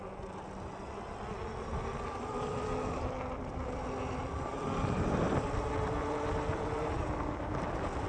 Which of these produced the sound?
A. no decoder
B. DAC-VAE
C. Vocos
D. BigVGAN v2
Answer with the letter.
A